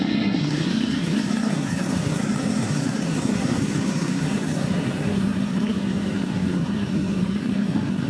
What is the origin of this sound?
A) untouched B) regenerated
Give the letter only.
B